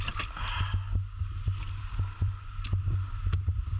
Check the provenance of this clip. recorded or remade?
recorded